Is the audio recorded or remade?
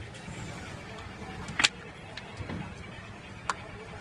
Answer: recorded